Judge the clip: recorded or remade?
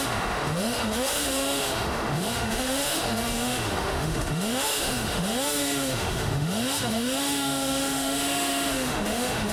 remade